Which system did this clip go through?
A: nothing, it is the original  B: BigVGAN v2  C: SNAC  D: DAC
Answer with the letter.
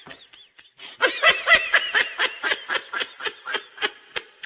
B